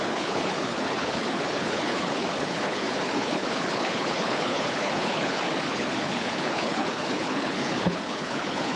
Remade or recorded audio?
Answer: remade